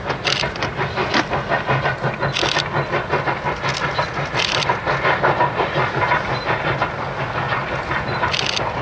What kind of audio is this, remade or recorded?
recorded